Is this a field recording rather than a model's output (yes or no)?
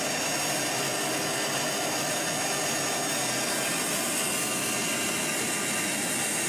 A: yes